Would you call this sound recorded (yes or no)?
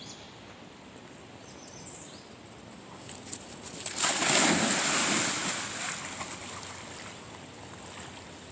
yes